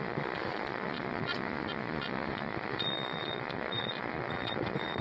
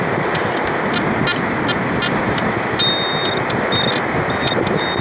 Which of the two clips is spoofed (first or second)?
first